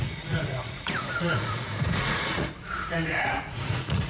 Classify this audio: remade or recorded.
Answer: remade